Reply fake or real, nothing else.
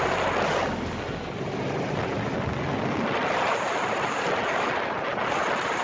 real